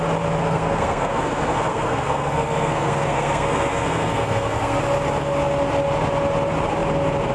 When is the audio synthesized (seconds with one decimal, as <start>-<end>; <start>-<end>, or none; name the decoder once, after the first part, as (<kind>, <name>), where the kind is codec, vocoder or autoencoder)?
0.4-4.8 (codec, SNAC)